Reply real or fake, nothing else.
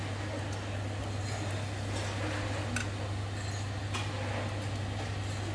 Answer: real